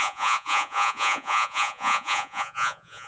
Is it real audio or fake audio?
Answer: fake